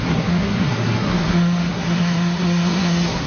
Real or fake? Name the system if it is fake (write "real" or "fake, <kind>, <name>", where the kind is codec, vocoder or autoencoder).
fake, codec, SNAC